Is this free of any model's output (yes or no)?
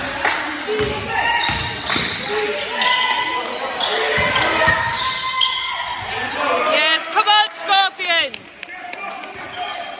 yes